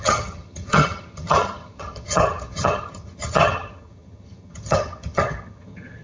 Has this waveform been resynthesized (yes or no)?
yes